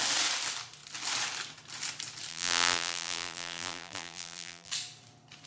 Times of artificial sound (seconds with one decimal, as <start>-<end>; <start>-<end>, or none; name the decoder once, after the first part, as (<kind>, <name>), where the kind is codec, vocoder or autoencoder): 2.3-4.7 (vocoder, BigVGAN v2)